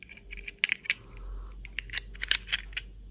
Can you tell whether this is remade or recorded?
recorded